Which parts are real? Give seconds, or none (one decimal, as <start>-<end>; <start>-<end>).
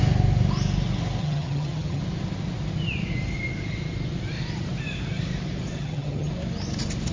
0.0-1.2; 2.0-5.8; 6.3-7.1